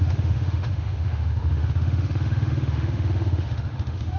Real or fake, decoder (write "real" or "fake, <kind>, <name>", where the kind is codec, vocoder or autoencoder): fake, autoencoder, DAC-VAE